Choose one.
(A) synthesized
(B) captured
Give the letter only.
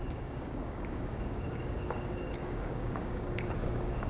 A